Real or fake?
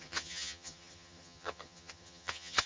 fake